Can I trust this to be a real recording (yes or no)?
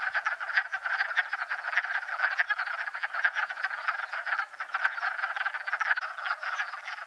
yes